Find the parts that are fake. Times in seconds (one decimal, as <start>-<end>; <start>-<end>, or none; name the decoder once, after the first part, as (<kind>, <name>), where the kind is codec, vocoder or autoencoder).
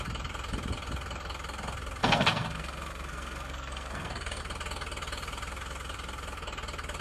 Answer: 2.0-4.4 (codec, SNAC)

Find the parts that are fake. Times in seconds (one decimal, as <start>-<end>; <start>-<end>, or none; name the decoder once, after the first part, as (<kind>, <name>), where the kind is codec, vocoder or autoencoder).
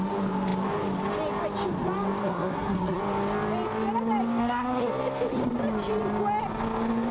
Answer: 2.2-3.0 (codec, SNAC); 4.4-4.9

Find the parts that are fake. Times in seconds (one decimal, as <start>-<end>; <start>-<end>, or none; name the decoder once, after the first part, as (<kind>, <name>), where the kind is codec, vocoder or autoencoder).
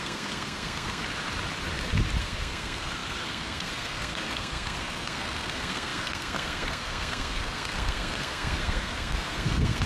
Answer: 0.0-1.0 (codec, SNAC); 2.2-9.9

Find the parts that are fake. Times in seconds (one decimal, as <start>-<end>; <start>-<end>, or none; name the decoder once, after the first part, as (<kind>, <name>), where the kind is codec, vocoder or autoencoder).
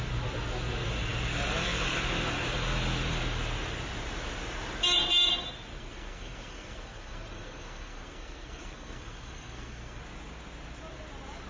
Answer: 5.7-10.0 (codec, SNAC)